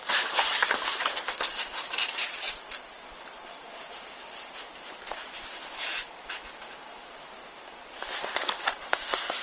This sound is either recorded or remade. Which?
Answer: remade